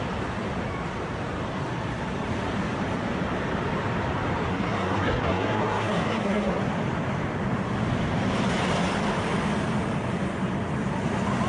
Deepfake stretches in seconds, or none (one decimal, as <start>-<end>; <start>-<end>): 4.5-6.7